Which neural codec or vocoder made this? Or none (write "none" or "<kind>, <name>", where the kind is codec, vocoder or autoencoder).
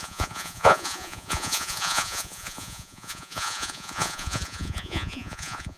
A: vocoder, Vocos